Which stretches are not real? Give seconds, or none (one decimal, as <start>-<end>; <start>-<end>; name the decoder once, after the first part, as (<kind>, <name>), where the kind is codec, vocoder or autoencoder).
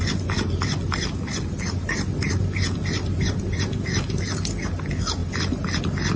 none